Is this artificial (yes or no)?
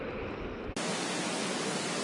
no